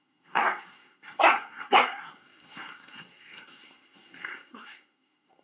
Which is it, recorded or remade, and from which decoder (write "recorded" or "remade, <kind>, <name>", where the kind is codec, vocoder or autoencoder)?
remade, codec, SNAC